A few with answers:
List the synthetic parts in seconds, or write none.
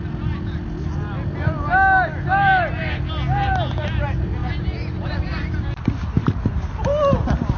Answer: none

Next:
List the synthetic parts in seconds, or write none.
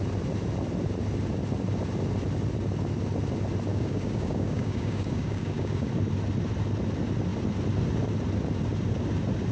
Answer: 3.7-5.9 (codec, DAC)